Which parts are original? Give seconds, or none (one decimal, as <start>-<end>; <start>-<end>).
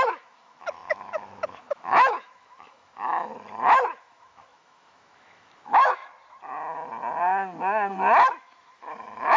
3.3-4.0; 6.0-8.3